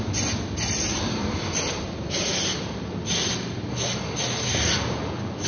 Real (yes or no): yes